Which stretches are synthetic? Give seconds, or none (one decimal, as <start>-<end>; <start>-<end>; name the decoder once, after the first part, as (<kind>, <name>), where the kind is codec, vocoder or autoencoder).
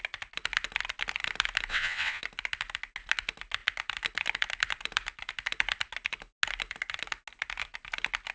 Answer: 1.7-2.2 (vocoder, WaveNeXt)